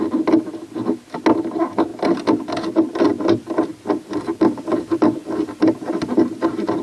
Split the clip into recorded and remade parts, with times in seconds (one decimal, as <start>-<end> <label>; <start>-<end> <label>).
0.0-5.2 recorded; 5.2-6.2 remade; 6.2-6.8 recorded